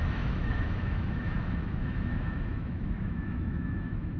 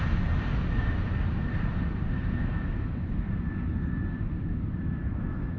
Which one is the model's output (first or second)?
first